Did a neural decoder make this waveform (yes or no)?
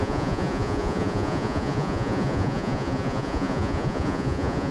yes